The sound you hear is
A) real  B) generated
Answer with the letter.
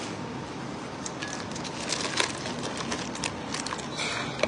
A